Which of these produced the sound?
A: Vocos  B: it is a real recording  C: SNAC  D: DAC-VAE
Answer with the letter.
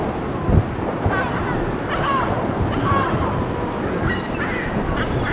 B